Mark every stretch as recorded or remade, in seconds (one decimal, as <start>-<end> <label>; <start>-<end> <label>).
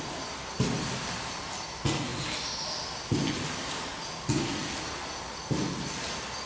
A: 0.0-6.5 recorded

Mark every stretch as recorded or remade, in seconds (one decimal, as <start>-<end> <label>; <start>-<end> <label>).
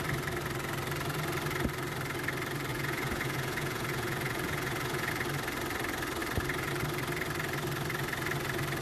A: 0.0-2.7 recorded; 2.7-5.1 remade; 5.1-8.8 recorded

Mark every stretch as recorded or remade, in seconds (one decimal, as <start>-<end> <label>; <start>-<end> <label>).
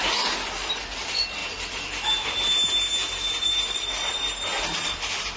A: 0.0-1.4 remade; 1.4-4.6 recorded; 4.6-5.4 remade